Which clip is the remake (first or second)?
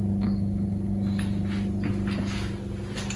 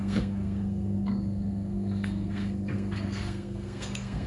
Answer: second